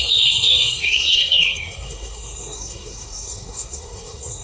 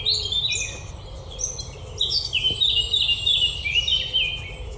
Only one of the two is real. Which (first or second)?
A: second